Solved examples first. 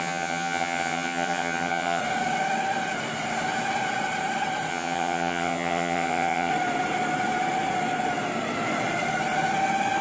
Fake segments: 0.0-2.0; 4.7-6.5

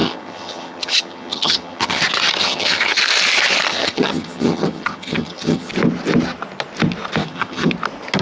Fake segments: 0.0-2.0; 2.4-3.0; 3.7-5.7; 7.2-7.7

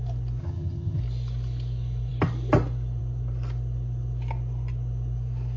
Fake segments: 0.4-1.0

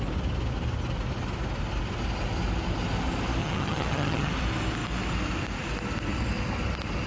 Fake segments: 3.4-4.3

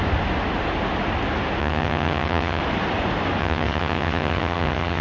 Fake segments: 1.6-2.6; 3.4-5.0

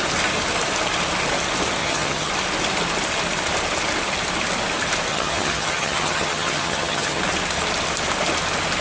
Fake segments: 1.8-2.3; 5.1-7.2

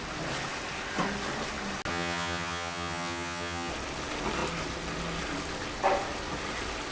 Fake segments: 1.9-3.7